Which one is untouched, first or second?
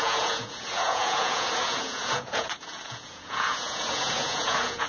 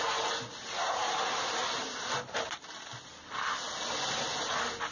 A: second